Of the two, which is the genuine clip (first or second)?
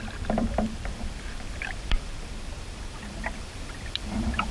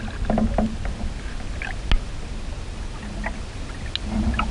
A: second